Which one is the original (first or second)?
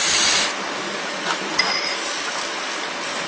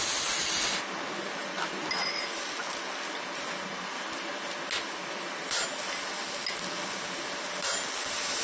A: second